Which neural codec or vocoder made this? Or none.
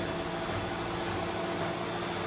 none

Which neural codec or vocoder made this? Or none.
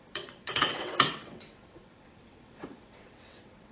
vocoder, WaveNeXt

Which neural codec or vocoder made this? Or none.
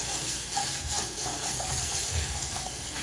codec, SNAC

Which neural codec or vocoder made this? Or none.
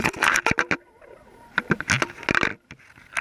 none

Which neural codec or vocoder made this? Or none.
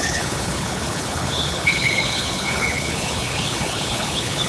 codec, HILCodec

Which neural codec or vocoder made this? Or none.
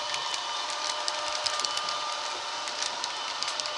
vocoder, BigVGAN v2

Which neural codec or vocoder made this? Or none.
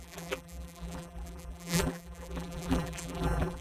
vocoder, BigVGAN v2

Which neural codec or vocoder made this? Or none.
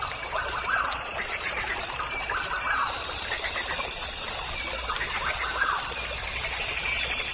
vocoder, BigVGAN v2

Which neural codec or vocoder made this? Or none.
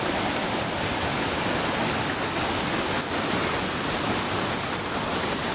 none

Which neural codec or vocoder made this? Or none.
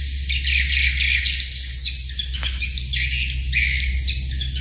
none